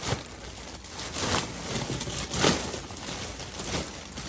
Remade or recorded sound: recorded